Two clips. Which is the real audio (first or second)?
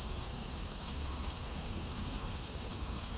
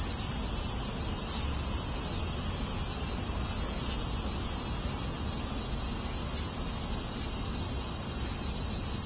second